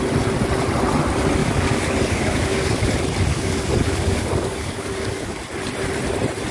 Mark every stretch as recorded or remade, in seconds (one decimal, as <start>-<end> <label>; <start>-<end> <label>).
0.0-1.4 recorded; 1.4-2.9 remade; 2.9-3.3 recorded; 3.3-5.4 remade; 5.4-6.5 recorded